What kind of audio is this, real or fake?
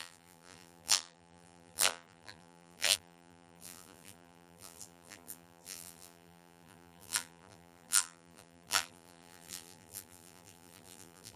fake